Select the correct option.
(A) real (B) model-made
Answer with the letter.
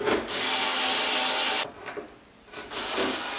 A